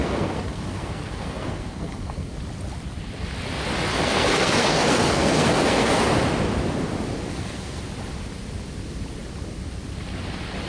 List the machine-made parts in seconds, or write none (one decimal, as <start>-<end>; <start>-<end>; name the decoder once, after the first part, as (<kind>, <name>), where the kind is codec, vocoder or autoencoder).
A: 0.0-2.3 (codec, SNAC); 3.9-6.0; 7.3-7.8